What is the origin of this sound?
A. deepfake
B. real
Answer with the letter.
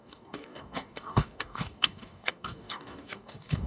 A